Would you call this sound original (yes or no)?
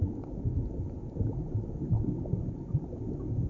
yes